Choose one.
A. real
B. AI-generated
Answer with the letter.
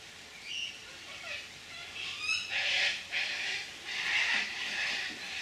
B